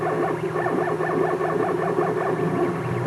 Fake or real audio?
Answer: real